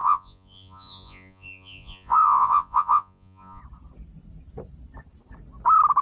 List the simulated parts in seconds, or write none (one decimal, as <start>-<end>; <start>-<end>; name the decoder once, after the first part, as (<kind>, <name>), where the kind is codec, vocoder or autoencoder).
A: 0.0-3.6 (vocoder, Vocos)